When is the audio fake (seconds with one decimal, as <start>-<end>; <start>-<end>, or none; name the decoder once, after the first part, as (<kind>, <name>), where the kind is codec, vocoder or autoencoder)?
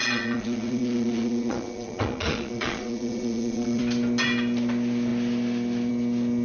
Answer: 0.0-3.8 (vocoder, Vocos)